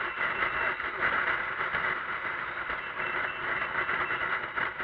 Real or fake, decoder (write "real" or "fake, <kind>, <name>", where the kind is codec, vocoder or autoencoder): real